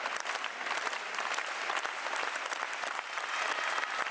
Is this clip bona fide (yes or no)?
yes